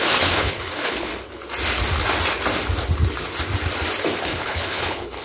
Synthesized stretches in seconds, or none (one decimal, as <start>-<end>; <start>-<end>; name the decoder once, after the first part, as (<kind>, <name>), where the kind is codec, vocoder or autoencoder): 0.0-1.1 (codec, HILCodec); 4.2-5.2